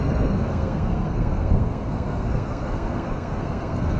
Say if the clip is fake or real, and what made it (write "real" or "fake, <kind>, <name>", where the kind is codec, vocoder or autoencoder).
fake, codec, SNAC